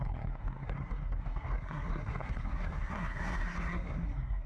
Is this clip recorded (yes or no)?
no